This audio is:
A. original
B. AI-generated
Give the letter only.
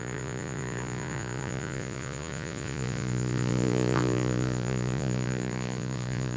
B